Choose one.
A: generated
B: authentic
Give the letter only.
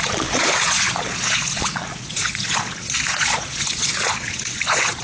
A